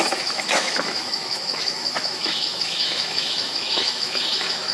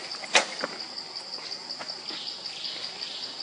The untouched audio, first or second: second